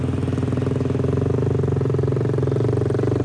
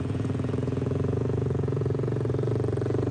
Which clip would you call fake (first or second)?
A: second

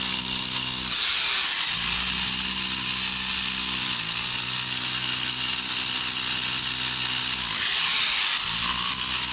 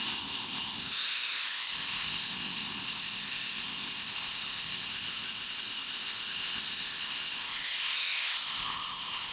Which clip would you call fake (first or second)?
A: second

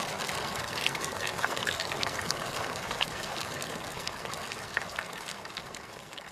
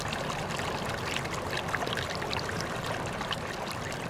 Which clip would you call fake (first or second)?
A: first